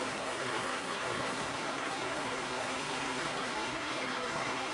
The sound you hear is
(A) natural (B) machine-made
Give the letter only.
B